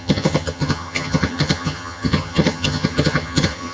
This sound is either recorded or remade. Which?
remade